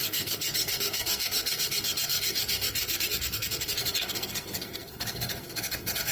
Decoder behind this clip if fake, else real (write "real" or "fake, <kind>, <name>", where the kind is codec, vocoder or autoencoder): fake, codec, SNAC